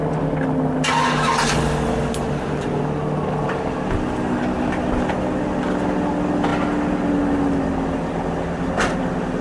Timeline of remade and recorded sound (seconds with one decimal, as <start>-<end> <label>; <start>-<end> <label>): 0.0-9.4 recorded